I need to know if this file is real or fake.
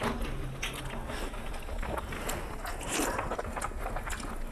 real